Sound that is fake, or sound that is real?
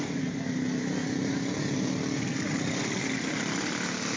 real